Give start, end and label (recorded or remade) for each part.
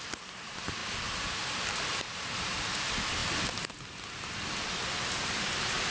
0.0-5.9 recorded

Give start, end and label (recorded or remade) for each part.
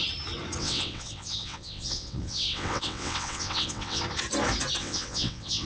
0.0-0.6 recorded; 0.6-4.0 remade; 4.0-4.8 recorded; 4.8-5.7 remade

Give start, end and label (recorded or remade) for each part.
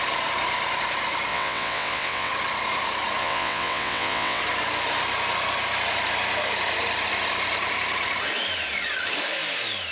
0.0-1.3 recorded; 1.3-2.3 remade; 2.3-3.2 recorded; 3.2-4.4 remade; 4.4-9.9 recorded